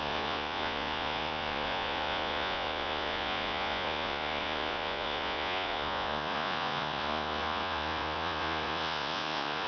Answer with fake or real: fake